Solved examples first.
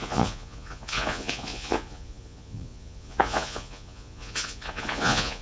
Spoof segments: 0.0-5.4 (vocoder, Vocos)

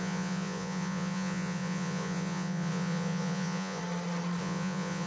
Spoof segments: 0.0-3.8 (vocoder, Vocos); 4.4-5.1

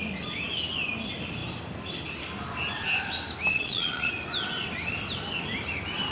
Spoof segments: 3.5-4.1 (vocoder, Vocos)

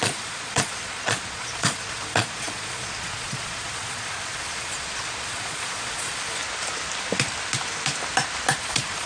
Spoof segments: 0.0-6.4 (vocoder, Vocos); 8.6-9.1

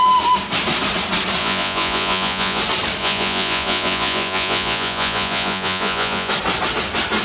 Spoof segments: 1.4-2.6 (vocoder, Vocos); 3.0-6.3